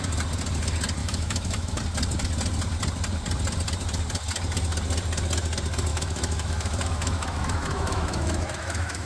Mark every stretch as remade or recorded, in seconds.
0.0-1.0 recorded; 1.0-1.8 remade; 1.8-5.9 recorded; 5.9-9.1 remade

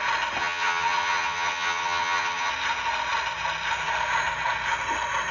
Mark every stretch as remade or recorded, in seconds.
0.0-0.4 recorded; 0.4-2.5 remade; 2.5-5.3 recorded

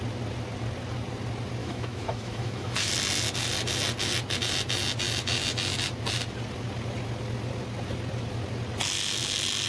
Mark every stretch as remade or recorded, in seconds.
0.0-1.6 recorded; 1.6-2.9 remade; 2.9-9.7 recorded

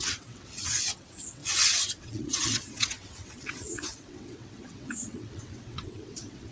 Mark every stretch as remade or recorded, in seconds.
0.0-6.5 remade